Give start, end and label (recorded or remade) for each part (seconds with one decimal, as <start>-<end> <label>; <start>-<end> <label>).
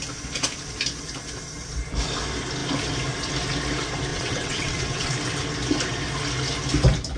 0.0-4.1 recorded; 4.1-5.1 remade; 5.1-7.2 recorded